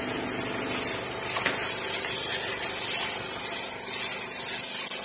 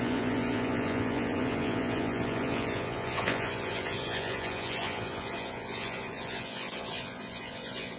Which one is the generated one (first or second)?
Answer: second